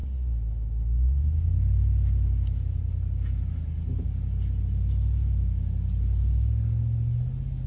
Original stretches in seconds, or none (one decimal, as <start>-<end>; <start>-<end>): 0.0-7.7